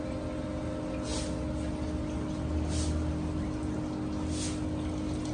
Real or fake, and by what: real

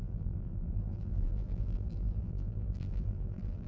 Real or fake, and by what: fake, vocoder, BigVGAN v2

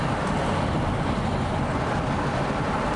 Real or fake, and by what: real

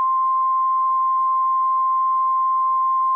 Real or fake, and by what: real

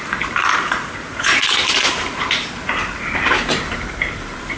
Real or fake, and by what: fake, vocoder, BigVGAN v2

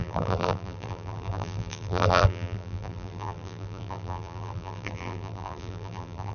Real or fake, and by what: fake, vocoder, BigVGAN v2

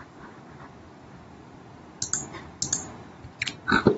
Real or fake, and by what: real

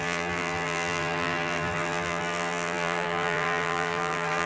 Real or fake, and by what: fake, vocoder, BigVGAN v2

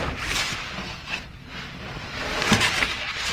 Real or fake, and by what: real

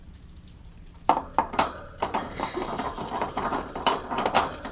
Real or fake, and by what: fake, vocoder, BigVGAN v2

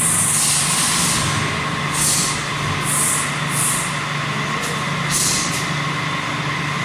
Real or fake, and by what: real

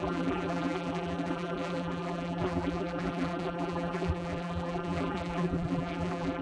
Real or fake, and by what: fake, vocoder, BigVGAN v2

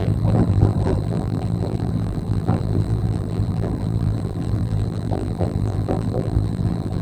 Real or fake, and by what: fake, vocoder, BigVGAN v2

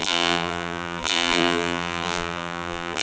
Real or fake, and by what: fake, vocoder, BigVGAN v2